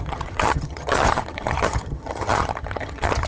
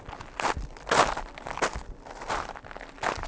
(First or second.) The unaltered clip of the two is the second